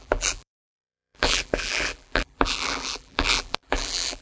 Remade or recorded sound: remade